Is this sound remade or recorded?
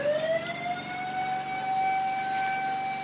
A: recorded